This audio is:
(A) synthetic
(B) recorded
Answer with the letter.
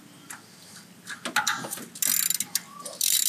B